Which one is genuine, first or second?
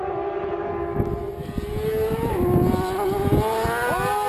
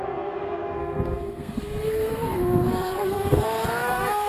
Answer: first